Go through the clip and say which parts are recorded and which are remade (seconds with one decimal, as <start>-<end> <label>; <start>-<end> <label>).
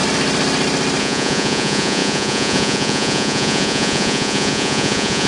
0.0-1.0 recorded; 1.0-5.3 remade